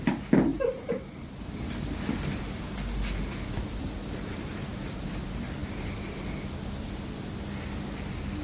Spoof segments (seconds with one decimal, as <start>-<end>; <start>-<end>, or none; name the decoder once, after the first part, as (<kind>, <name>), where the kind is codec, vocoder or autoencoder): 0.5-1.0 (vocoder, BigVGAN v2); 4.0-5.0